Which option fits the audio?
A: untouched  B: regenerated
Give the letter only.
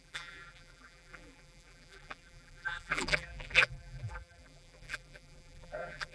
B